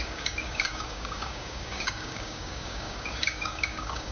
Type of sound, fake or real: fake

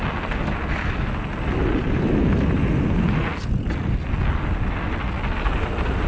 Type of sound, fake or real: real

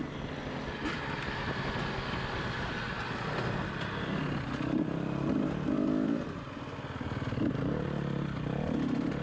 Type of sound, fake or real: real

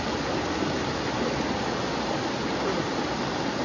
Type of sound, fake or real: real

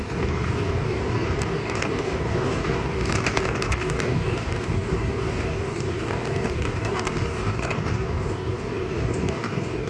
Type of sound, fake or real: fake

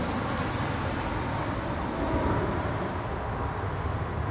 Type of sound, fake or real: real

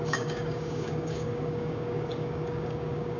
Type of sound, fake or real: fake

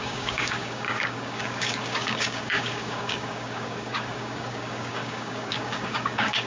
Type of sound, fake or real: fake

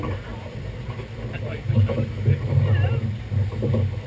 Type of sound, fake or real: real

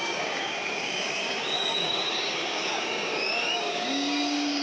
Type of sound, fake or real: fake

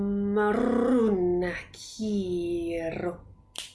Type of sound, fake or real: real